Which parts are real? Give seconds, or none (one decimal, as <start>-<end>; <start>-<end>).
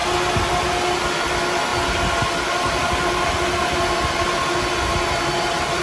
0.0-5.8